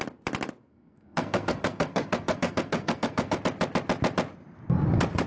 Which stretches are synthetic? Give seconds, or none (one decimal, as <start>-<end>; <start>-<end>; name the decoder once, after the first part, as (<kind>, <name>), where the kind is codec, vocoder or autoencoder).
0.6-3.4 (codec, SNAC)